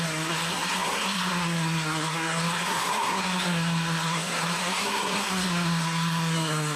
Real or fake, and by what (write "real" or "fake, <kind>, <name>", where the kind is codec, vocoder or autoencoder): fake, codec, SNAC